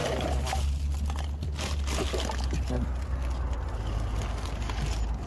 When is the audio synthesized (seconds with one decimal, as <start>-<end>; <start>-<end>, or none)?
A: none